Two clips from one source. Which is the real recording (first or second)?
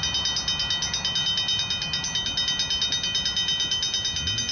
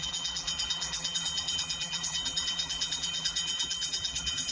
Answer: first